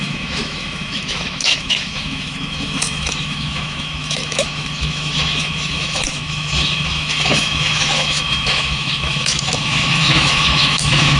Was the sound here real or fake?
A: fake